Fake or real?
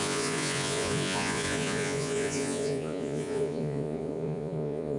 fake